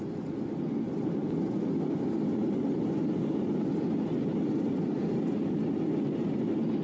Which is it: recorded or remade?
recorded